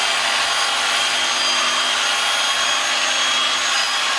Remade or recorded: recorded